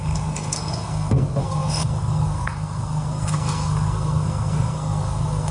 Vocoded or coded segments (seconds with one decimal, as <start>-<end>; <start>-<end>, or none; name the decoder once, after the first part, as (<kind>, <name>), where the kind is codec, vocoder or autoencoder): 0.0-5.5 (codec, SNAC)